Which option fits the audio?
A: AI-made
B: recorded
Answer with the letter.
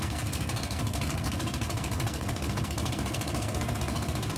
A